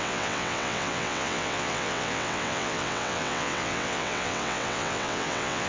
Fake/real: fake